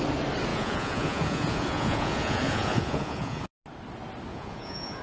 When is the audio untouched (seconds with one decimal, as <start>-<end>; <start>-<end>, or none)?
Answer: 0.0-0.5; 3.5-4.3